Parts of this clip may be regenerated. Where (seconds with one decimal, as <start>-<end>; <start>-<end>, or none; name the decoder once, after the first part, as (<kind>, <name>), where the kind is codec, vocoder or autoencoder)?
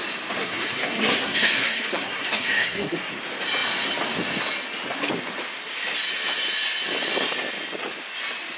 0.4-3.1 (codec, SNAC)